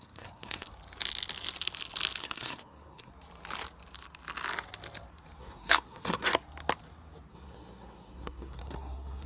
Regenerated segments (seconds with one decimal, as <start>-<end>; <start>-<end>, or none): 0.0-0.7; 2.2-3.1; 5.4-6.3; 7.3-9.3